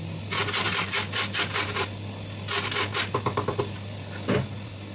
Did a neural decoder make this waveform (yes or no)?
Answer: no